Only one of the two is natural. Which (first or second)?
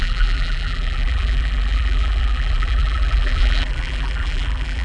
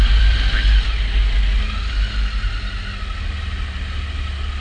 second